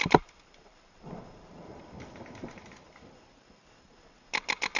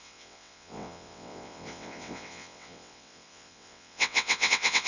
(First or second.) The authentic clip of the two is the first